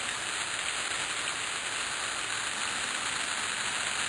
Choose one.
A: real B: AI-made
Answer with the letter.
A